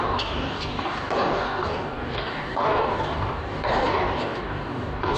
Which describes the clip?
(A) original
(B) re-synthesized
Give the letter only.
B